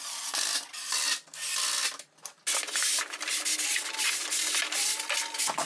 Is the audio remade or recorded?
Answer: recorded